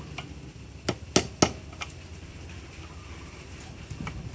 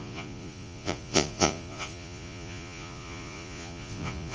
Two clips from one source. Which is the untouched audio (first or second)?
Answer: first